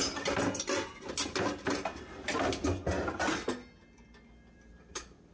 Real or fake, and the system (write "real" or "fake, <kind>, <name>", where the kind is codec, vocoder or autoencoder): real